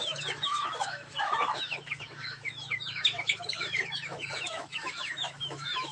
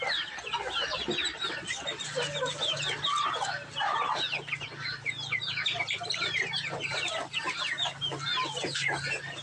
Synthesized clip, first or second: first